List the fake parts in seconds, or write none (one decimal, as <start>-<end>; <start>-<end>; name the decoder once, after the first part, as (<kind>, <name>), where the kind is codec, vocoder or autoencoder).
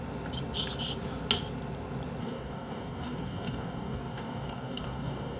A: 2.2-5.4 (codec, DAC)